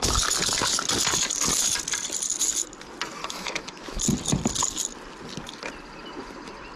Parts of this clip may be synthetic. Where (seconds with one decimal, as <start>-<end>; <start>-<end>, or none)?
3.2-4.0